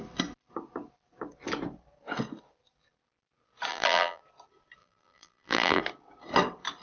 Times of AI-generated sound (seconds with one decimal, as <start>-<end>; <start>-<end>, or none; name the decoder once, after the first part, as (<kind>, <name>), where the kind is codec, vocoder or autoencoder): 3.7-4.2 (vocoder, BigVGAN v2); 4.8-5.8